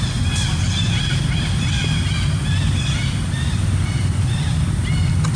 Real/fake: real